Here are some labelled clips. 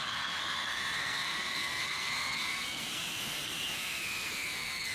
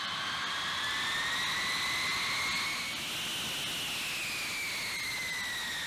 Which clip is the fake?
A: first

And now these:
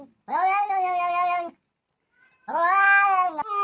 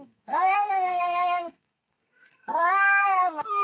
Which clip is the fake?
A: second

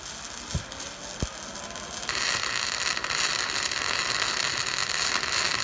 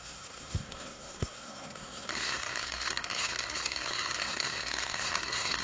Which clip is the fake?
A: second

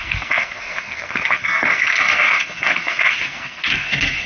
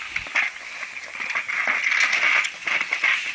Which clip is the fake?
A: first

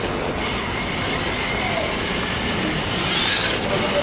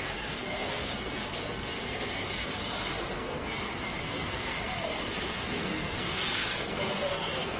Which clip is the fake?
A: second